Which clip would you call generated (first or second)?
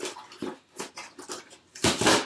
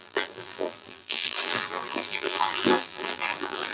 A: second